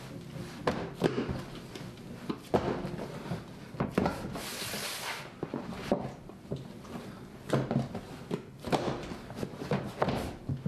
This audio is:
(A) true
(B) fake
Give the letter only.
A